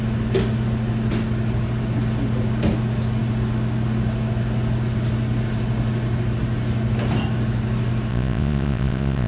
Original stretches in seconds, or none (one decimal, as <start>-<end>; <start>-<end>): 0.0-8.1